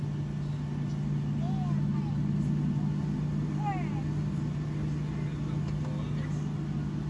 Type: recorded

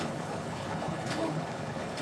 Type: remade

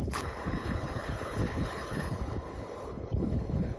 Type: remade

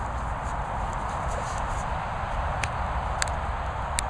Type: recorded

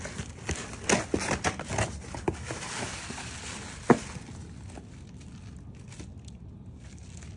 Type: recorded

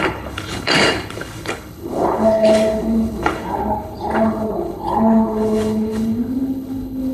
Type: remade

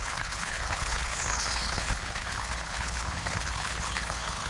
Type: remade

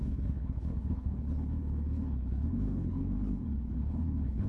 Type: remade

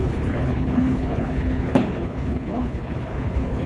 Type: remade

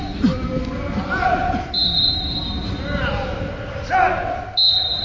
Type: recorded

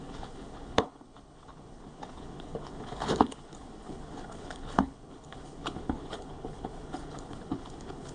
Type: remade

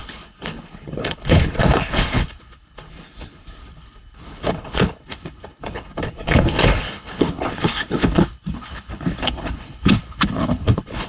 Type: remade